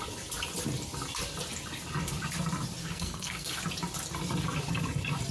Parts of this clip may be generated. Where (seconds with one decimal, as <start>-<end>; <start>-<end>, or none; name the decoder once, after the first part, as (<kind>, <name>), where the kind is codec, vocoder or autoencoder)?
2.8-3.6 (codec, SNAC)